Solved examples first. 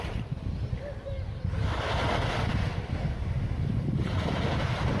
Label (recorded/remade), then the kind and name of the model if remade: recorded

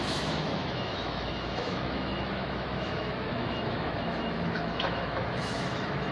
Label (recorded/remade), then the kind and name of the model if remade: remade, autoencoder, DAC-VAE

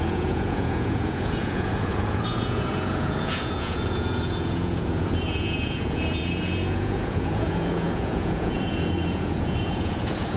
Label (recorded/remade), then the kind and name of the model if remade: remade, vocoder, Vocos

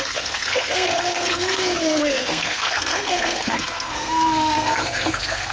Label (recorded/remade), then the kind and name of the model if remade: remade, codec, SNAC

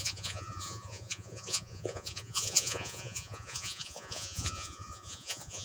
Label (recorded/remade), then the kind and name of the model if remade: remade, vocoder, Vocos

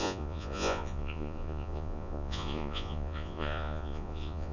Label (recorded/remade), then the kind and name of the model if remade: remade, vocoder, Vocos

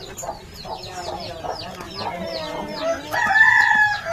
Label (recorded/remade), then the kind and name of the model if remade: recorded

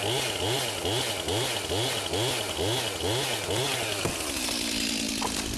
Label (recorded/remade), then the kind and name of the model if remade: recorded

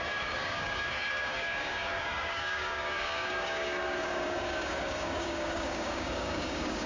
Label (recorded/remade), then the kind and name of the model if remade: remade, codec, DAC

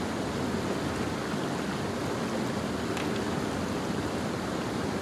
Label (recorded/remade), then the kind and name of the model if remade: recorded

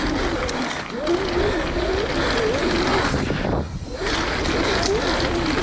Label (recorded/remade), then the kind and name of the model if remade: recorded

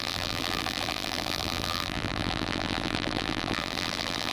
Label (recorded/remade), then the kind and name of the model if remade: remade, vocoder, BigVGAN v2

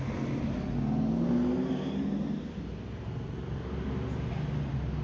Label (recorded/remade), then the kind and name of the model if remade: recorded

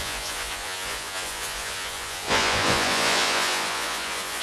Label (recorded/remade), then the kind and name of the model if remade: remade, vocoder, Vocos